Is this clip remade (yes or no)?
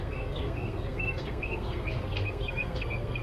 yes